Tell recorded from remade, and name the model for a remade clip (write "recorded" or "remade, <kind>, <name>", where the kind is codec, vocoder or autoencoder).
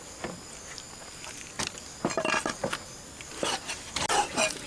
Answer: recorded